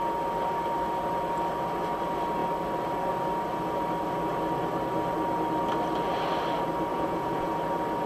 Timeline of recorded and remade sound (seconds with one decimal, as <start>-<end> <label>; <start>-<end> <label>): 0.0-6.9 recorded; 6.9-7.6 remade; 7.6-8.1 recorded